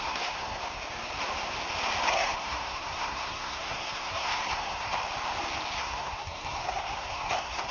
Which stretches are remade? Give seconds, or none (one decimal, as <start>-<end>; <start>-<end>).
0.0-0.6; 2.1-5.0; 5.8-7.7